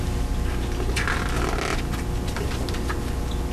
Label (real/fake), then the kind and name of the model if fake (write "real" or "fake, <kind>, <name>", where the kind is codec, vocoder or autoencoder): real